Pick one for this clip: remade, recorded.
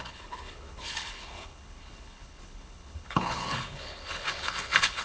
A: remade